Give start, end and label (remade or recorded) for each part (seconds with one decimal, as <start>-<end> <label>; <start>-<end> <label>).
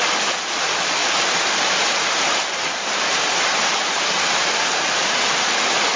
0.0-1.0 recorded; 1.0-4.6 remade; 4.6-6.0 recorded